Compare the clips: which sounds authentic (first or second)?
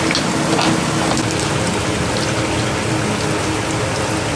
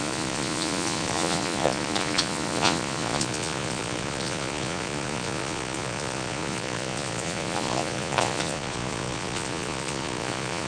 first